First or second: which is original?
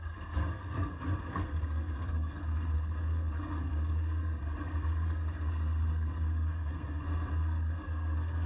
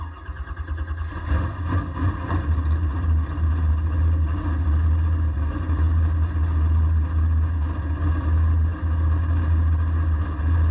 second